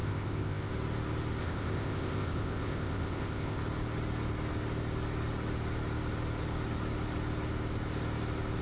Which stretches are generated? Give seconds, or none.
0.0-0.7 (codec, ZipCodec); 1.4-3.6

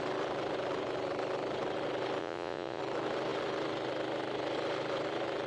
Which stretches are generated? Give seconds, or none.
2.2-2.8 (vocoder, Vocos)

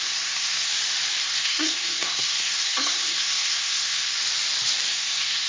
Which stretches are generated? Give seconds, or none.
0.0-0.7 (codec, SNAC); 1.2-4.2; 4.9-5.5